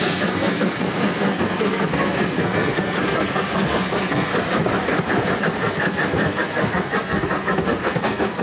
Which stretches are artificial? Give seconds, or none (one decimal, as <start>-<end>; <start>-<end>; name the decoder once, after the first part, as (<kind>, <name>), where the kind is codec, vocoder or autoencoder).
0.0-4.3 (codec, SNAC); 5.4-8.4